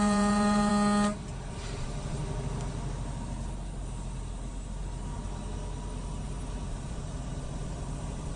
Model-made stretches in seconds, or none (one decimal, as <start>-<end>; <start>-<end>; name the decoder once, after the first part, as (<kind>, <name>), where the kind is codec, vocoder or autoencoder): 0.0-0.7 (vocoder, BigVGAN v2); 1.5-2.2; 6.7-8.4